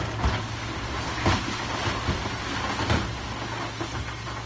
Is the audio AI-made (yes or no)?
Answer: no